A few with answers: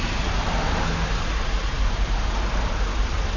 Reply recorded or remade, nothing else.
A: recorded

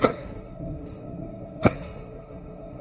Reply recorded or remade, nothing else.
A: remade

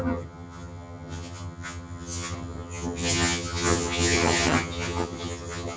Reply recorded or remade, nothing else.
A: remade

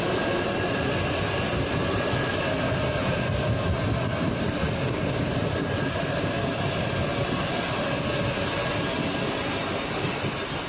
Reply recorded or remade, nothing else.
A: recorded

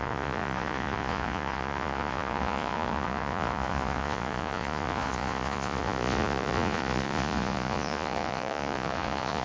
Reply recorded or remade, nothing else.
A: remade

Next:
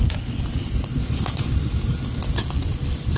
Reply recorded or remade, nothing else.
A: recorded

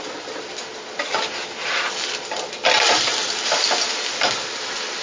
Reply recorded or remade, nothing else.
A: recorded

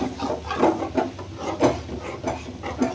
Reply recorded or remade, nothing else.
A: recorded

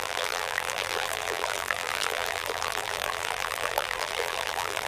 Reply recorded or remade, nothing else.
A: remade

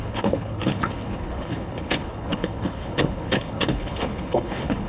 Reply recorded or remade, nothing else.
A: remade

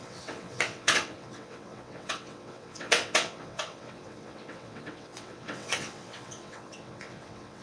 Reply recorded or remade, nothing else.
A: remade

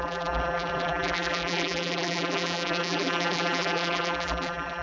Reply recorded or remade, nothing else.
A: remade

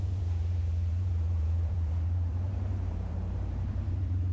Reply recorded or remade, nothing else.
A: remade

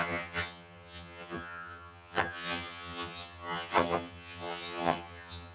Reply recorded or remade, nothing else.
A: remade